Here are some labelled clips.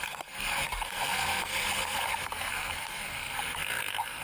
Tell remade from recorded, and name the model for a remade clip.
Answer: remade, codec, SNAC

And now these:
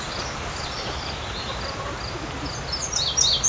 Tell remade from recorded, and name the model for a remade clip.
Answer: recorded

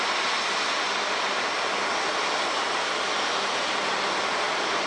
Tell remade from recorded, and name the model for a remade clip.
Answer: recorded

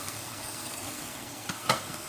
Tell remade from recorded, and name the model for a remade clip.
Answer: remade, codec, SNAC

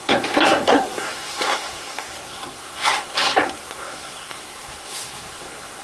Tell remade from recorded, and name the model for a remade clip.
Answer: remade, codec, SNAC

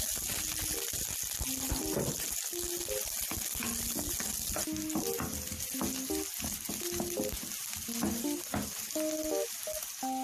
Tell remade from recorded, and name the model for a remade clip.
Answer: recorded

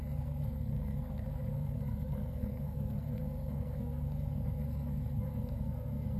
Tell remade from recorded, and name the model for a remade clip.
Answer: remade, codec, SNAC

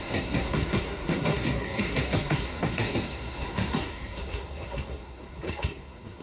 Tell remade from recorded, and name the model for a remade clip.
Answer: remade, codec, SNAC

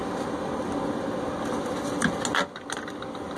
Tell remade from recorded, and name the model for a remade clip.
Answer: recorded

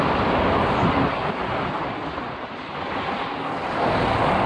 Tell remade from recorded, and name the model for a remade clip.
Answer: recorded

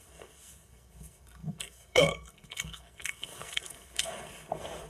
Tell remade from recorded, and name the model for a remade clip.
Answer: remade, codec, SNAC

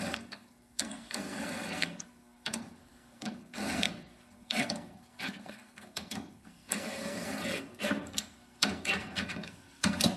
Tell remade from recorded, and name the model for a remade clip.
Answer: remade, codec, SNAC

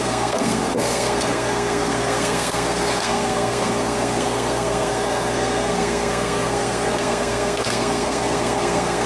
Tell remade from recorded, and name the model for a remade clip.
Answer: remade, codec, SNAC